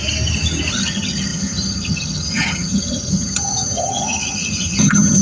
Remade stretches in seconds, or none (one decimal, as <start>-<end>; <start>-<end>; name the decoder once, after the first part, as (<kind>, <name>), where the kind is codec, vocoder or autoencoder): 0.7-5.2 (vocoder, HiFi-GAN)